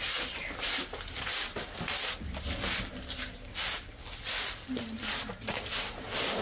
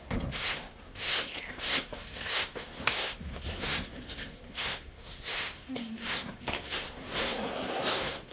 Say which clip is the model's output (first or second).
second